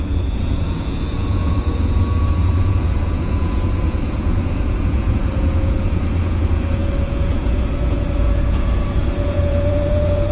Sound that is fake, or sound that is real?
fake